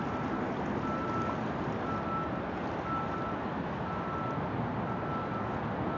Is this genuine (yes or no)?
yes